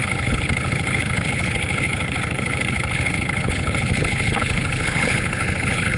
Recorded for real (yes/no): no